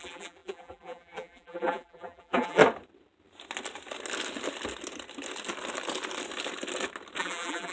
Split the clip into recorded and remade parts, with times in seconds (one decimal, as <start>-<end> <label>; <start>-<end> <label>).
0.0-2.6 remade; 2.6-7.2 recorded; 7.2-7.7 remade